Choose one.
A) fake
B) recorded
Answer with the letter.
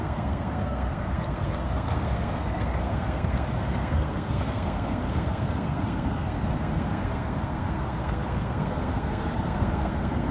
A